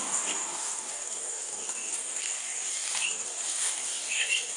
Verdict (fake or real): fake